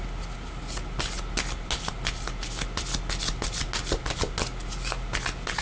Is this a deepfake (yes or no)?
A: no